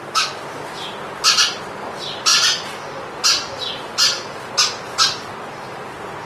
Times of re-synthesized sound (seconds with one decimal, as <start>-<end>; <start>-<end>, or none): 2.3-4.5